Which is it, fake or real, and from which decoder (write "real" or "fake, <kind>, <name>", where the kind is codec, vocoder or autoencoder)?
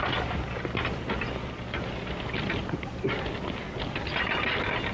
real